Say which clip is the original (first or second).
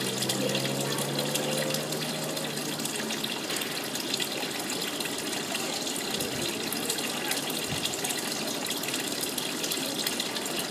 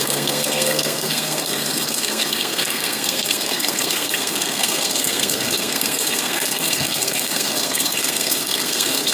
first